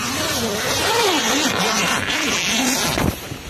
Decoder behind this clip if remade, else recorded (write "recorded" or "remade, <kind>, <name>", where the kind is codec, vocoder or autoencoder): recorded